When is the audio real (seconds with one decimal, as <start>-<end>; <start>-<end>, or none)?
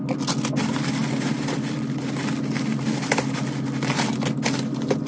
0.0-5.1